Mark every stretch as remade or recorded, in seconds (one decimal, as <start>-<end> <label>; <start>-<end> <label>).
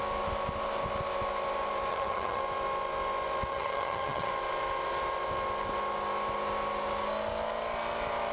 0.0-1.9 recorded; 1.9-2.4 remade; 2.4-3.5 recorded; 3.5-4.3 remade; 4.3-8.3 recorded